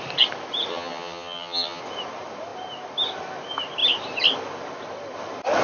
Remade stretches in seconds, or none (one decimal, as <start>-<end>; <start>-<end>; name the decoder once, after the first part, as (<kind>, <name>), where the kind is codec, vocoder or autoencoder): 0.7-1.8 (vocoder, HiFi-GAN)